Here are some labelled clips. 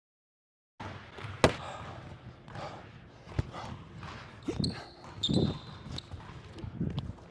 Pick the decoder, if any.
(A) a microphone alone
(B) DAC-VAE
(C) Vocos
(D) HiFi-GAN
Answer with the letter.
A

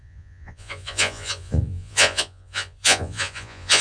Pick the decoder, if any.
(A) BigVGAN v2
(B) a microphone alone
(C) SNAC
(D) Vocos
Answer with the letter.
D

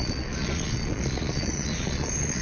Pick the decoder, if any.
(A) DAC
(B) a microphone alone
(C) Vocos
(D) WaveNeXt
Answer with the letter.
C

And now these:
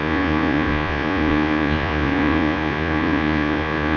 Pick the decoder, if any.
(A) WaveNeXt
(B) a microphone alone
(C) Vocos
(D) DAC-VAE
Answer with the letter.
C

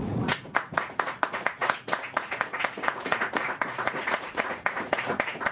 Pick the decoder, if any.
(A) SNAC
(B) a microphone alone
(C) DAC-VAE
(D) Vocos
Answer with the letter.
D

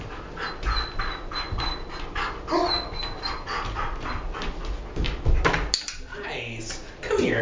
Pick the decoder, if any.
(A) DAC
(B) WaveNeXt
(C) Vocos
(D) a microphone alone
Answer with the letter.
D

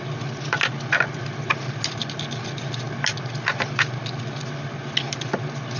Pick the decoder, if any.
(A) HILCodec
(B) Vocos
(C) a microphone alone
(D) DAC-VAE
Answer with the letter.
C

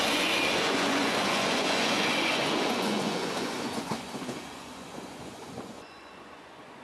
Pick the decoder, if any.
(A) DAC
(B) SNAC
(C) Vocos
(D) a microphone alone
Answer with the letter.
C